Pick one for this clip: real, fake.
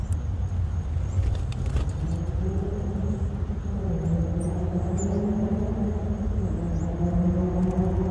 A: real